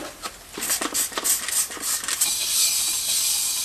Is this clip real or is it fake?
real